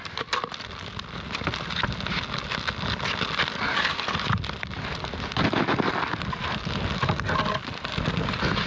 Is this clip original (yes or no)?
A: yes